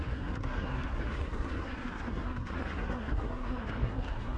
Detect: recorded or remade remade